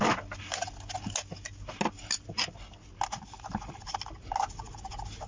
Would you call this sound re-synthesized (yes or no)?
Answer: no